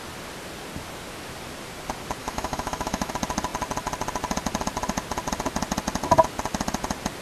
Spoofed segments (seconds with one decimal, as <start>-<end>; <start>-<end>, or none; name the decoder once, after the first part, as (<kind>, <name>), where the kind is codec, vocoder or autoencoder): 2.2-3.1 (autoencoder, DAC-VAE)